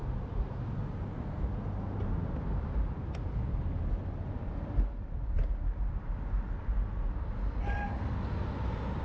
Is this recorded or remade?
recorded